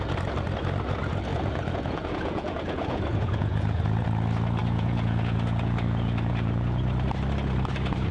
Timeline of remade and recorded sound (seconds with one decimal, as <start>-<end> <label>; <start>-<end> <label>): 0.0-1.3 recorded; 1.3-3.8 remade; 3.8-4.6 recorded; 4.6-6.8 remade; 6.8-8.1 recorded